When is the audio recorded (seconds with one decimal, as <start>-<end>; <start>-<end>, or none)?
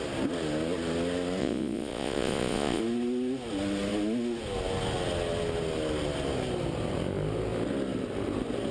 0.0-1.4; 2.8-8.7